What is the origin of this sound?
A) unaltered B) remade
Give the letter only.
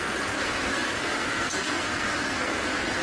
B